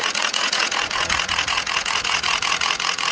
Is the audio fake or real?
fake